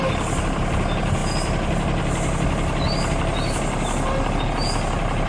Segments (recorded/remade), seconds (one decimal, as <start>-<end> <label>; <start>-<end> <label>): 0.0-5.3 recorded